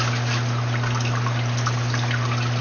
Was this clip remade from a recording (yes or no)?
no